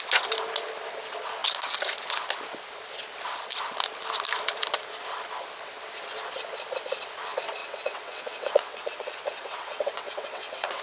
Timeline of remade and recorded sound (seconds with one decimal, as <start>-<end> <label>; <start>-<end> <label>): 0.0-7.6 recorded; 7.6-10.8 remade